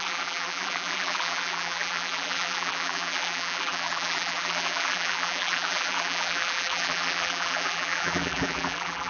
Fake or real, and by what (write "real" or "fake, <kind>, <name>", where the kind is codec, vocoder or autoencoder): fake, vocoder, BigVGAN v2